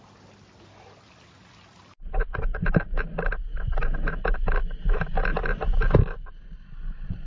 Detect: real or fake real